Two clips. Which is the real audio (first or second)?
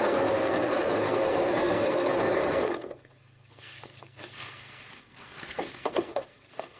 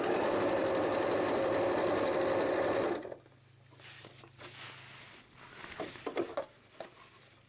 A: second